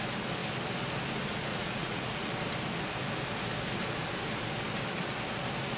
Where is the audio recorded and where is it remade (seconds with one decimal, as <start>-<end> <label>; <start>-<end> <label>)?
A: 0.0-1.5 recorded; 1.5-2.3 remade; 2.3-5.8 recorded